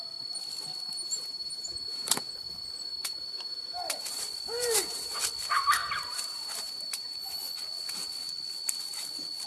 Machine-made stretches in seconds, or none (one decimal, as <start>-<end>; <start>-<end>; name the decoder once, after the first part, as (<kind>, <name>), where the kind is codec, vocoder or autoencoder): 0.9-2.2 (vocoder, BigVGAN v2); 2.9-5.2; 5.8-7.4